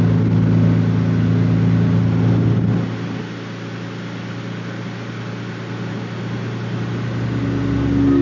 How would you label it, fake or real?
real